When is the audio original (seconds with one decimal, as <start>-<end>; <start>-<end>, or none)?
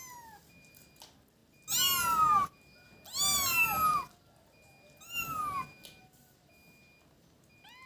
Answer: 0.0-7.9